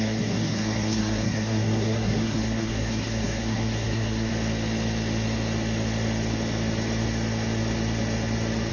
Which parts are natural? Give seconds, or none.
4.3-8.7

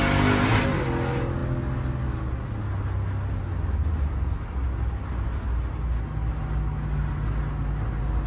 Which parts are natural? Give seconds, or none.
0.0-8.3

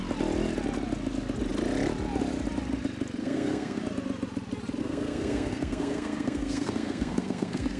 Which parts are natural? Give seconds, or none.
0.0-3.2; 3.8-4.8

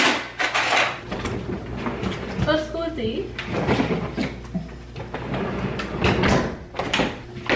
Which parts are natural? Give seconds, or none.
0.0-7.6

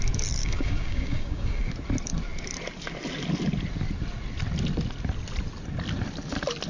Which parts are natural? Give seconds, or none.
0.0-0.4; 1.7-6.7

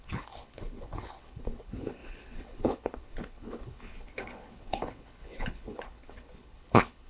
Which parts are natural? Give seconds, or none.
none

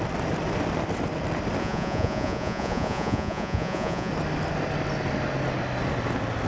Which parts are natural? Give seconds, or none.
0.0-1.6; 4.1-6.5

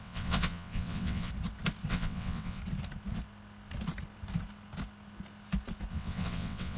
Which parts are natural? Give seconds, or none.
1.3-1.9; 2.6-5.9